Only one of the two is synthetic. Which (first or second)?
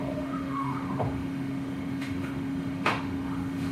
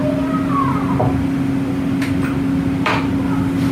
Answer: first